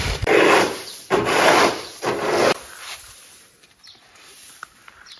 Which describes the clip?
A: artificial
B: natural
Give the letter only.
A